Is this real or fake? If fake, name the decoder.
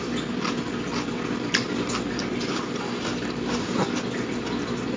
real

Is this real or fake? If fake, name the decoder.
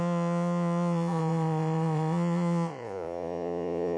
fake, vocoder, Vocos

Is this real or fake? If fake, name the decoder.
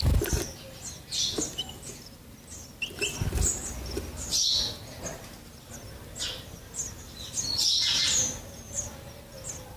real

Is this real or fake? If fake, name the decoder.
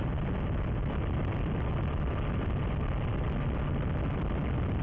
real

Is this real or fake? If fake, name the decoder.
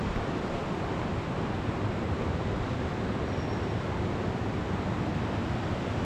real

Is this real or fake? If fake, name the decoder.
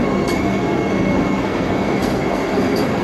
fake, codec, SNAC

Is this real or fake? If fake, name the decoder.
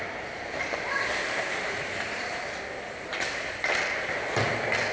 real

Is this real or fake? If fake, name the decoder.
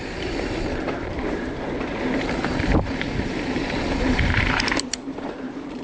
fake, vocoder, BigVGAN v2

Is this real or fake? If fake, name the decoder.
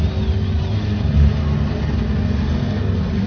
real